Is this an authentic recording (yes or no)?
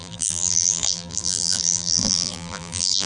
no